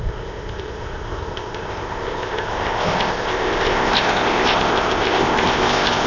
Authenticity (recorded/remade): remade